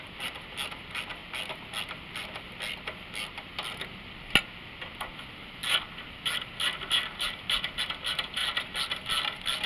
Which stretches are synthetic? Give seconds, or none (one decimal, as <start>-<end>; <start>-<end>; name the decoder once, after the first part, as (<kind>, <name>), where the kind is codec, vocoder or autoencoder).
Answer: none